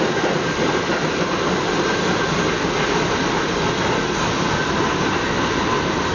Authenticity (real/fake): real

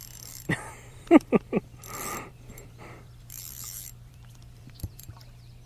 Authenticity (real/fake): fake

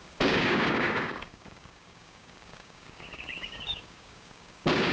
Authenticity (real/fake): fake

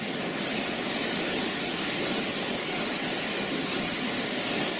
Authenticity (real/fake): real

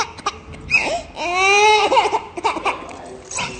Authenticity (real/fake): real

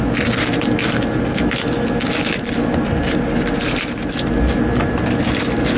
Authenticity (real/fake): real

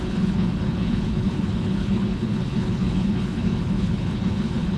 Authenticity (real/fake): fake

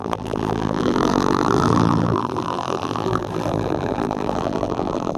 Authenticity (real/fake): fake